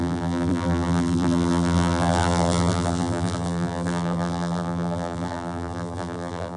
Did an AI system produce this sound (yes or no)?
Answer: yes